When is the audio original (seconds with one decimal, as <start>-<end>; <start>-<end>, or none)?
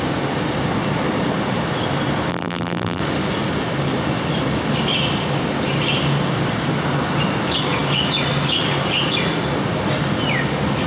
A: 0.0-2.3; 3.0-10.9